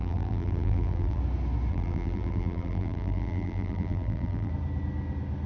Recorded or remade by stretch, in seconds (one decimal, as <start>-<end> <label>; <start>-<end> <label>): 0.0-1.2 remade; 1.2-1.7 recorded; 1.7-4.5 remade; 4.5-5.5 recorded